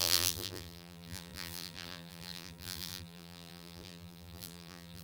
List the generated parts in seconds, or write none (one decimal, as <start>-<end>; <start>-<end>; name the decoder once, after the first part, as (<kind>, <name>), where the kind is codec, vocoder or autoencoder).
0.0-5.0 (vocoder, BigVGAN v2)